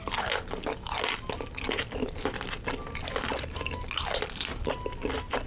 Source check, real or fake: real